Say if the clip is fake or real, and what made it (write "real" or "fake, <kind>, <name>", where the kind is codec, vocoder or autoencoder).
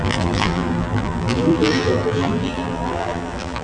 fake, vocoder, BigVGAN v2